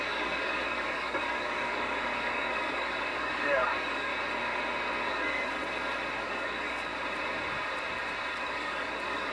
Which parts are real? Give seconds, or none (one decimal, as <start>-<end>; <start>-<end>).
4.1-5.0; 5.6-6.2; 6.9-8.3